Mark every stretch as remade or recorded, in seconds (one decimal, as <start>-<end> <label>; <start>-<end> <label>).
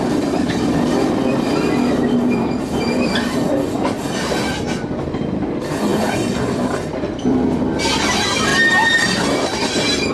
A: 0.0-5.9 recorded; 5.9-6.8 remade; 6.8-10.1 recorded